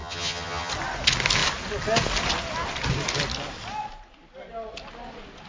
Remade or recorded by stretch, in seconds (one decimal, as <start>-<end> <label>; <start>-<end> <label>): 0.0-0.7 remade; 0.7-5.5 recorded